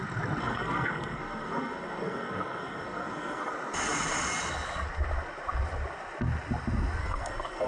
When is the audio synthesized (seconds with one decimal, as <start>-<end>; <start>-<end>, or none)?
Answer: 0.4-3.5; 7.0-7.7